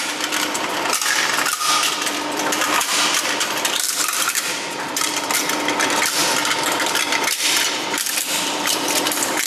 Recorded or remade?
remade